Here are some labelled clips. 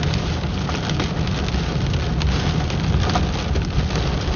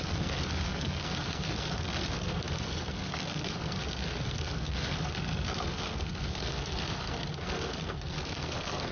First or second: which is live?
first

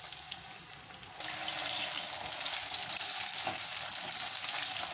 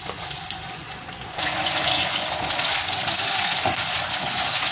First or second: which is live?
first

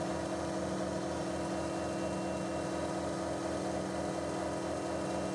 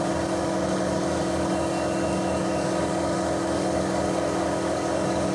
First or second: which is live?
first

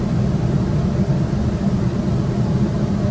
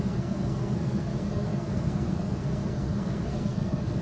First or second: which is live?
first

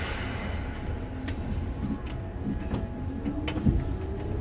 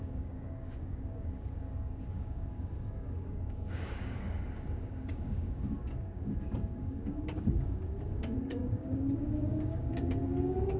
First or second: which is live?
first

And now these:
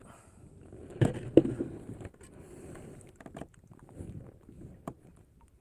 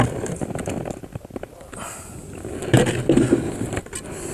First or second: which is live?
second